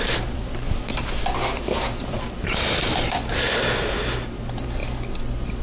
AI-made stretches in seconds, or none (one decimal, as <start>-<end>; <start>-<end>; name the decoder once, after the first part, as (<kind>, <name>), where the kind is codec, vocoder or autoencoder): 0.0-0.8 (vocoder, BigVGAN v2); 1.6-4.8